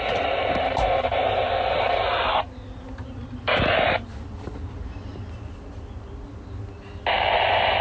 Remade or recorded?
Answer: recorded